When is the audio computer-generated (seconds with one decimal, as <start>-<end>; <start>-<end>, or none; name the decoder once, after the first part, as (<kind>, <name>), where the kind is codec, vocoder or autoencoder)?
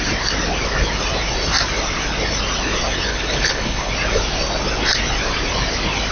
3.1-3.9 (codec, HILCodec)